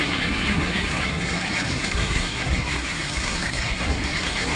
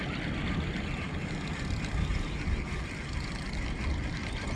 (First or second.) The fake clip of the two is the first